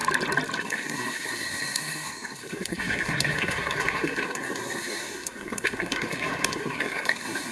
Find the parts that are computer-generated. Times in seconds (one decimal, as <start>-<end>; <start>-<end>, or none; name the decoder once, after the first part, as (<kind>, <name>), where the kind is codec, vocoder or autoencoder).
0.6-7.5 (codec, SNAC)

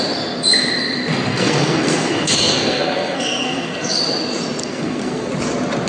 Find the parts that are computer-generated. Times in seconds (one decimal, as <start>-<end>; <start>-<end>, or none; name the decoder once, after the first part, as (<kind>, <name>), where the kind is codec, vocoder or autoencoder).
1.3-4.0 (codec, SNAC); 4.6-5.3

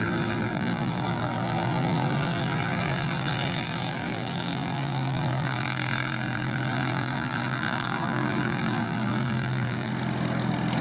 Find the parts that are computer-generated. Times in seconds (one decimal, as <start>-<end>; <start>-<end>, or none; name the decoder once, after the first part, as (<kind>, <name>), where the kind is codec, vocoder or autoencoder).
0.0-9.9 (vocoder, BigVGAN v2)

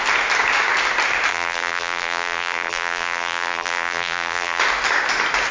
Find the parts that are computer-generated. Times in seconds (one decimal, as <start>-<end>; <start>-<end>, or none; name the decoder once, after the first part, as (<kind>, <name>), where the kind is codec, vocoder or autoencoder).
1.3-4.6 (vocoder, BigVGAN v2)

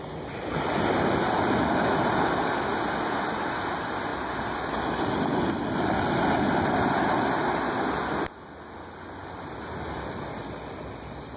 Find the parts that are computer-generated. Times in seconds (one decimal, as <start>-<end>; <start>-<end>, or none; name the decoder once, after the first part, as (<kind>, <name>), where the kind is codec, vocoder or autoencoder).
9.2-10.4 (vocoder, BigVGAN v2)